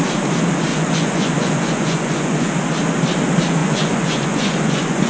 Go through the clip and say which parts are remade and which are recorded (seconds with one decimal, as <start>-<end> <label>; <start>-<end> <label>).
0.0-0.7 recorded; 0.7-2.5 remade; 2.5-3.6 recorded; 3.6-5.1 remade

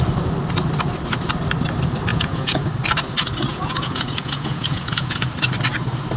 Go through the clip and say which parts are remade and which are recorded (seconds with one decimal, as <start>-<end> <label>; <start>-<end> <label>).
0.0-2.1 recorded; 2.1-2.7 remade; 2.7-3.5 recorded; 3.5-5.3 remade; 5.3-6.2 recorded

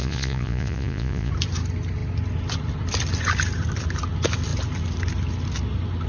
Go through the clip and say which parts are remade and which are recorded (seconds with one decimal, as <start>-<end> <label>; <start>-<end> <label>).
0.0-1.3 remade; 1.3-6.1 recorded

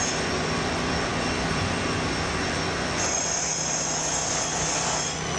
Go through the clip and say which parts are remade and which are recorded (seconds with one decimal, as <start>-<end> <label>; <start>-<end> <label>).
0.0-5.4 remade

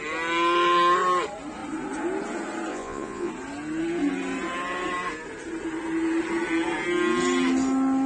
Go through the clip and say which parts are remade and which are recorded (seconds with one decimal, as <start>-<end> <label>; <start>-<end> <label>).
0.0-2.7 recorded; 2.7-3.3 remade; 3.3-8.1 recorded

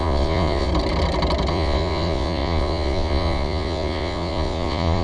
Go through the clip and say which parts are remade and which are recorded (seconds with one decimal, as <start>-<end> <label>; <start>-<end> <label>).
0.0-0.7 remade; 0.7-1.5 recorded; 1.5-5.0 remade